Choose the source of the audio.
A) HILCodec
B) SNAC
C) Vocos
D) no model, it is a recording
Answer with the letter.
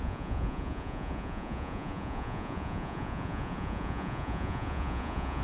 C